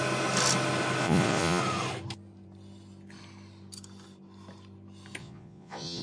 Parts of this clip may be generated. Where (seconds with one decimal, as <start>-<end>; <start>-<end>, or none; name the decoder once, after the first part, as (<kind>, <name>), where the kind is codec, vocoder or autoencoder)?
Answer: 1.0-1.6 (vocoder, Vocos); 5.2-6.0